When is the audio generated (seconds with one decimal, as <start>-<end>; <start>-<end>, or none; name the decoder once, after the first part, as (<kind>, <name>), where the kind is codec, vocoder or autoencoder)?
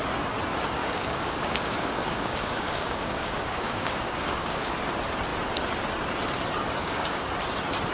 0.8-4.7 (codec, DAC); 6.8-7.3